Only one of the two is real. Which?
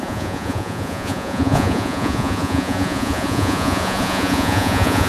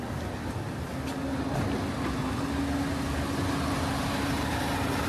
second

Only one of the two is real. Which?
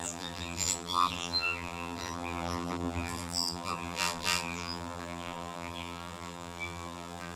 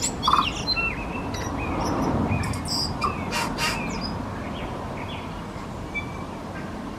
second